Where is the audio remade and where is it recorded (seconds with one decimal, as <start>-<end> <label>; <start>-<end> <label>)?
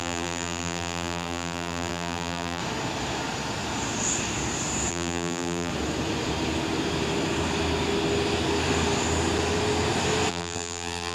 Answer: 0.0-2.6 remade; 2.6-4.9 recorded; 4.9-5.7 remade; 5.7-10.3 recorded; 10.3-11.1 remade